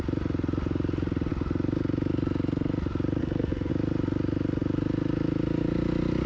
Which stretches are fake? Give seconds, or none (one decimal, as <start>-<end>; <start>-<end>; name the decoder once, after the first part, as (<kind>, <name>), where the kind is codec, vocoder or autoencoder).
3.2-3.7 (codec, SNAC)